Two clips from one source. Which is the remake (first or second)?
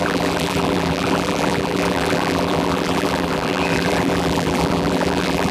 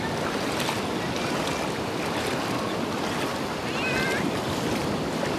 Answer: first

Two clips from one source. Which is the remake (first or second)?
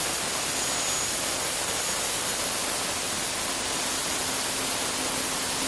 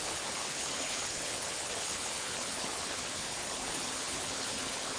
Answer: second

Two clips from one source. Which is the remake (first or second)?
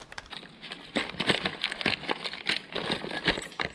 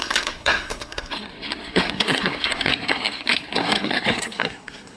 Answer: second